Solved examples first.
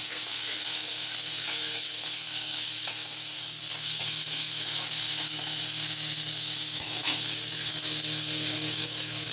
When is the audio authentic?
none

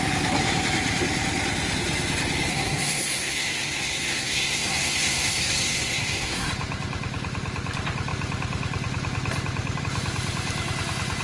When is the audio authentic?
0.0-2.5; 6.5-11.2